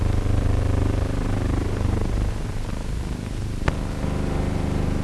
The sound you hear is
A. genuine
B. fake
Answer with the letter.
B